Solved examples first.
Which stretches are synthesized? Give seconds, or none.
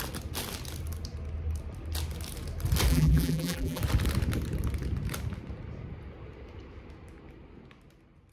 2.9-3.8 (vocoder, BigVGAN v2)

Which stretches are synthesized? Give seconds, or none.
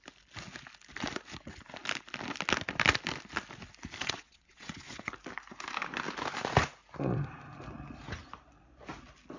4.0-5.1 (vocoder, WaveNeXt)